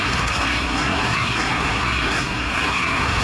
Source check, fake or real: fake